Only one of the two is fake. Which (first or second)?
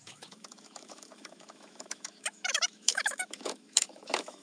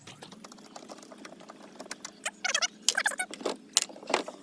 first